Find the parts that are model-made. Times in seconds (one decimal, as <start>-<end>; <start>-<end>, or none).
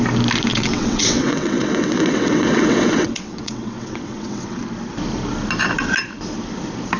0.5-4.6